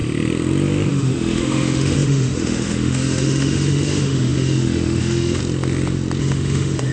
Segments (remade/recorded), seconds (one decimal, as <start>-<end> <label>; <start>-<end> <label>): 0.0-0.9 recorded; 0.9-5.4 remade; 5.4-6.2 recorded; 6.2-6.9 remade